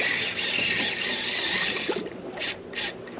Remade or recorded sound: recorded